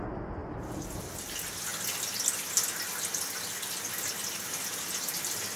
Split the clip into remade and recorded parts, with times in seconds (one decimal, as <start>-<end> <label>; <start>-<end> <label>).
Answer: 0.0-5.6 recorded